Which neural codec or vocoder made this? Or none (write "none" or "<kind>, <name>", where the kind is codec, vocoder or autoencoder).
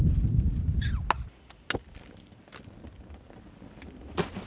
none